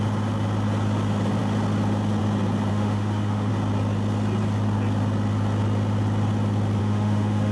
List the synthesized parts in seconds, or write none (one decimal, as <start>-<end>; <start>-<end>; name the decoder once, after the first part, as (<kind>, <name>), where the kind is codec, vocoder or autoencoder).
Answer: 2.7-3.5 (autoencoder, DAC-VAE); 6.8-7.5